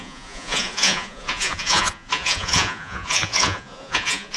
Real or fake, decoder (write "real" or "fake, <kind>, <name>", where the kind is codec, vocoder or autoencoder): fake, vocoder, Vocos